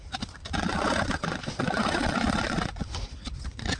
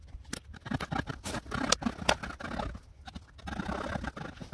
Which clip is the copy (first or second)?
first